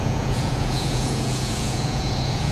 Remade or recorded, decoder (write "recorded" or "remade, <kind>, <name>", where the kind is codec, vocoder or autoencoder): remade, vocoder, Vocos